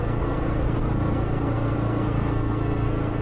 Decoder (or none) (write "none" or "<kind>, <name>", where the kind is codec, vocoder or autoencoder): codec, SNAC